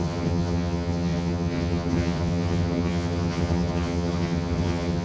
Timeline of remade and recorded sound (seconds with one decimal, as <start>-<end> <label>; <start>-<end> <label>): 0.0-5.0 remade